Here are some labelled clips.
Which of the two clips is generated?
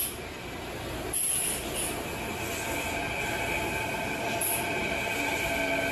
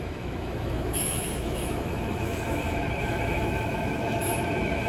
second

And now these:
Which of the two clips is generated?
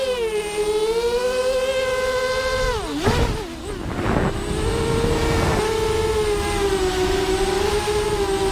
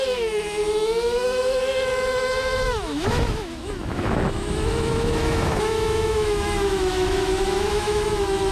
second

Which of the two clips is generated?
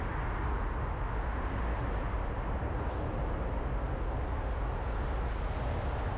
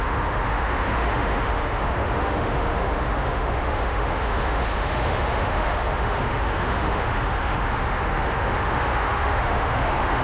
second